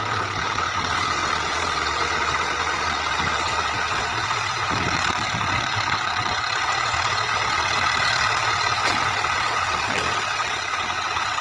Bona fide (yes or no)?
no